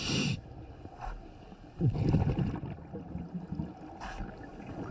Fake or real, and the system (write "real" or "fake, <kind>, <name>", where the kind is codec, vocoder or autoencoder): real